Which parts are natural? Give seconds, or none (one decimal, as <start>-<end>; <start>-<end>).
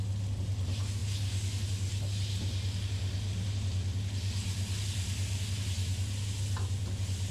0.0-7.3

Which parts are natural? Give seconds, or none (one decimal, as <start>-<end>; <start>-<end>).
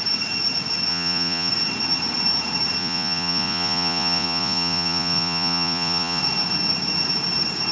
0.0-0.9; 1.5-2.8; 6.2-7.7